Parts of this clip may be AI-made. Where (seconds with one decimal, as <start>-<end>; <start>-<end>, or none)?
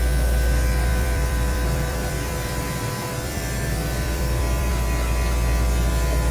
0.9-4.7